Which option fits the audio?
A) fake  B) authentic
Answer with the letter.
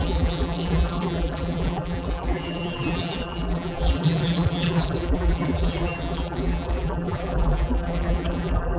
A